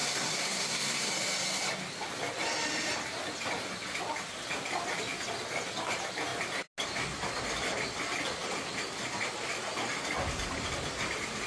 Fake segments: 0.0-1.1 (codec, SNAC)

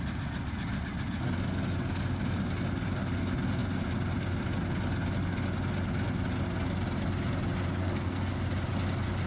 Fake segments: 7.8-8.3 (codec, SNAC)

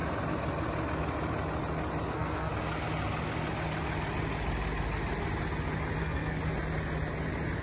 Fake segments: 2.1-2.5 (codec, SNAC); 6.0-6.4

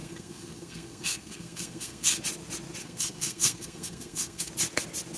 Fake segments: 0.0-2.2 (codec, SNAC); 2.8-4.5

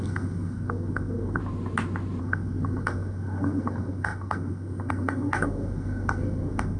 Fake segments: 0.0-1.4 (codec, SNAC); 2.2-6.8

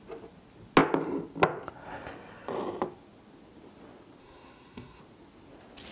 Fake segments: 4.2-5.0 (codec, SNAC)

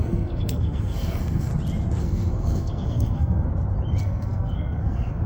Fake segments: 0.0-1.5 (codec, SNAC); 2.0-3.5; 4.0-5.3

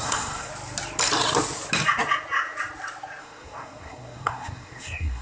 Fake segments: 0.0-0.5 (codec, SNAC); 3.2-5.2